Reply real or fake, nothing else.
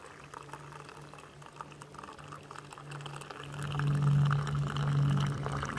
real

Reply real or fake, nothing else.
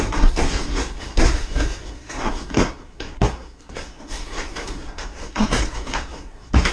fake